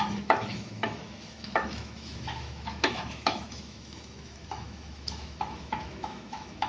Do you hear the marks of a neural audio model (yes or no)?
yes